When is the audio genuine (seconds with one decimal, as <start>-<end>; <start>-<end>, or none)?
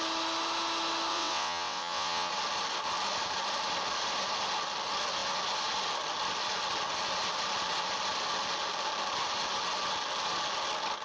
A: 0.0-1.1; 2.3-11.0